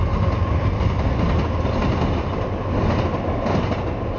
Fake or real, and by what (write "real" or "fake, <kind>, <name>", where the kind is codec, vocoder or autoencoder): real